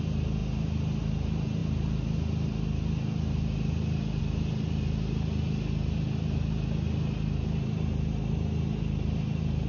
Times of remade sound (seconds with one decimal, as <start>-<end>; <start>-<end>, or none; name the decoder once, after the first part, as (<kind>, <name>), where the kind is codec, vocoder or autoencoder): none